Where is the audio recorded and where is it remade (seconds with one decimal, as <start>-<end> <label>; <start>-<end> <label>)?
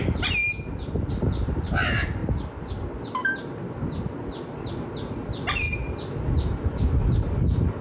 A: 0.0-0.4 remade; 0.4-1.1 recorded; 1.1-2.2 remade; 2.2-6.2 recorded; 6.2-7.8 remade